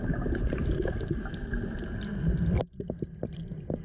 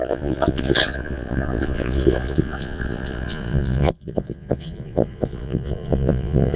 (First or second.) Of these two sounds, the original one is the first